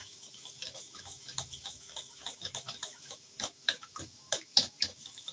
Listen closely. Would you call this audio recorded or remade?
remade